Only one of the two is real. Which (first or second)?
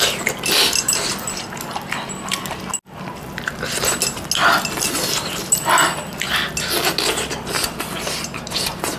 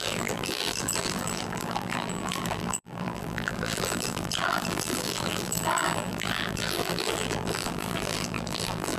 first